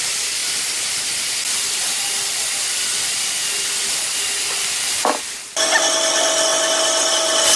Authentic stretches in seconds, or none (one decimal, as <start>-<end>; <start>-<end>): 0.0-0.4; 3.5-7.6